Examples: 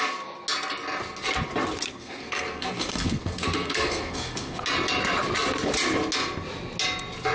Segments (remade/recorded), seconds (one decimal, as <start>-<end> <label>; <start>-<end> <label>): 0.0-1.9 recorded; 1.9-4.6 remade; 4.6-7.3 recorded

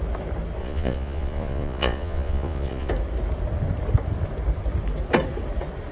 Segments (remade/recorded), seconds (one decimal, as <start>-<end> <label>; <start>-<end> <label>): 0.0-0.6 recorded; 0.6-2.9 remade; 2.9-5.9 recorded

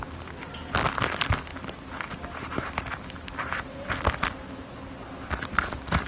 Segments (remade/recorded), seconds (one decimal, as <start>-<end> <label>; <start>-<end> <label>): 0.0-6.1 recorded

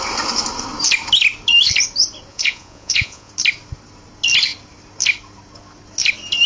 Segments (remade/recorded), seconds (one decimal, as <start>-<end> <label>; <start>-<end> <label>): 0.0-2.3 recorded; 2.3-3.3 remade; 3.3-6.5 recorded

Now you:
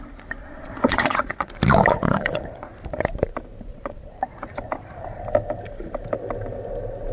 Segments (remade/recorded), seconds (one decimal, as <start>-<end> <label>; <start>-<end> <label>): 0.0-0.4 recorded; 0.4-1.5 remade; 1.5-1.9 recorded; 1.9-2.7 remade; 2.7-3.7 recorded; 3.7-5.2 remade; 5.2-7.1 recorded